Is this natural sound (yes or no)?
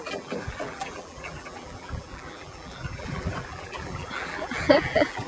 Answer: no